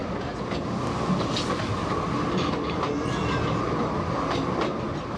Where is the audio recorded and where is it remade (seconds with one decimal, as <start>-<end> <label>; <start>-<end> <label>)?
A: 0.0-5.2 recorded